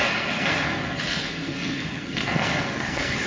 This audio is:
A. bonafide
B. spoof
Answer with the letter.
B